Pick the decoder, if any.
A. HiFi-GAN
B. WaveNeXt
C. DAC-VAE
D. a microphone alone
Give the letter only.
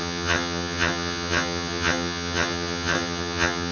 A